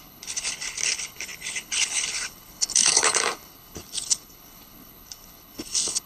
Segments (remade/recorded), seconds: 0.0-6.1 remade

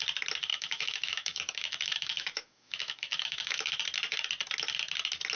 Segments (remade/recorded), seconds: 0.0-0.5 recorded; 0.5-3.7 remade; 3.7-5.4 recorded

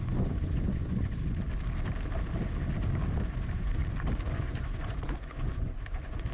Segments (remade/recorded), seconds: 0.0-1.2 remade; 1.2-3.3 recorded; 3.3-3.8 remade; 3.8-4.3 recorded; 4.3-6.3 remade

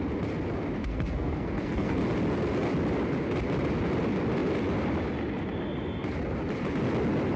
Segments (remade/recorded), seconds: 0.0-0.8 recorded; 0.8-2.0 remade; 2.0-7.4 recorded

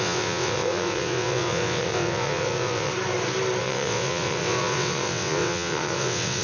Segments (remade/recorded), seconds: 0.0-2.9 remade; 2.9-3.6 recorded; 3.6-6.4 remade